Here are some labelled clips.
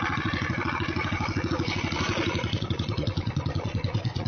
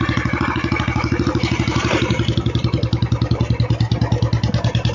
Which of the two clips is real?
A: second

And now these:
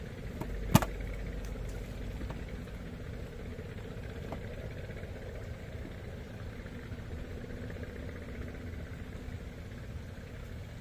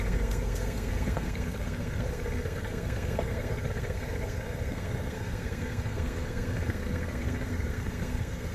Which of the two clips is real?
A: first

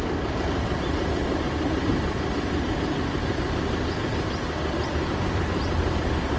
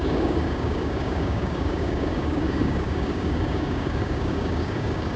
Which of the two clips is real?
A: first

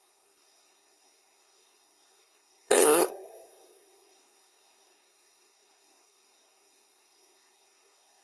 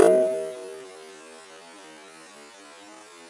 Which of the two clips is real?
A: second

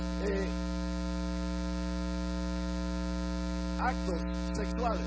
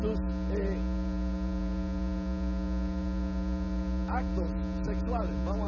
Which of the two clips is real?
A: first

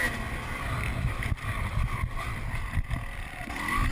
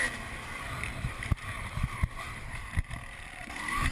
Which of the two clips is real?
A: first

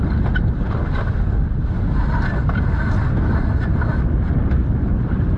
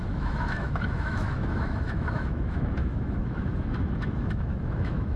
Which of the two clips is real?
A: first